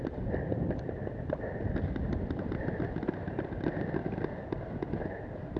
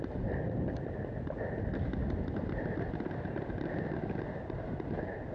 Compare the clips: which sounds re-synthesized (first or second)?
first